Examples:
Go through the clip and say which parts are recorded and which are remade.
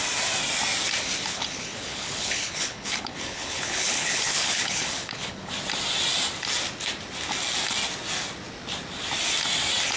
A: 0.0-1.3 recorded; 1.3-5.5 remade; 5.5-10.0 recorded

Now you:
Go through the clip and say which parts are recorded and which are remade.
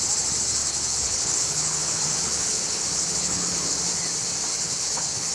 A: 0.0-0.6 recorded; 0.6-3.8 remade; 3.8-4.5 recorded; 4.5-5.3 remade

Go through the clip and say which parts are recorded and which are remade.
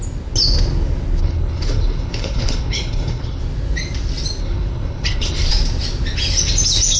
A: 0.0-1.2 recorded; 1.2-3.4 remade; 3.4-4.4 recorded; 4.4-5.5 remade; 5.5-7.0 recorded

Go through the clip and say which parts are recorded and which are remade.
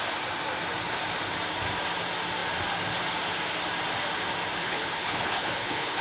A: 0.0-4.6 recorded; 4.6-6.0 remade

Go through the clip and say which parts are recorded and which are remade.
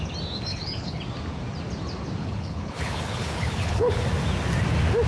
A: 0.0-0.5 recorded; 0.5-1.0 remade; 1.0-2.2 recorded; 2.2-4.0 remade; 4.0-5.1 recorded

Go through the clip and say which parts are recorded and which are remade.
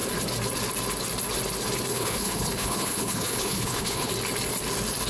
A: 0.0-1.9 recorded; 1.9-4.1 remade; 4.1-5.1 recorded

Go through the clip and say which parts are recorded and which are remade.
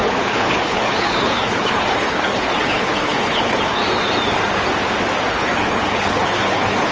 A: 0.0-3.8 remade; 3.8-5.3 recorded; 5.3-6.9 remade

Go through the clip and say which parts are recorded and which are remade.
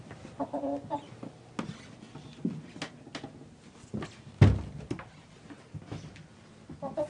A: 0.0-7.1 recorded